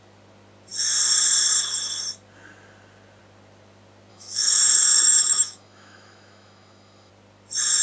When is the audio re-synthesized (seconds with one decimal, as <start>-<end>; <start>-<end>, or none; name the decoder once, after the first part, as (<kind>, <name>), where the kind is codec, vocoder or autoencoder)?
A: 4.1-7.1 (autoencoder, DAC-VAE)